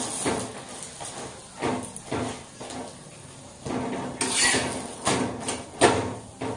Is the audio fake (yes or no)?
no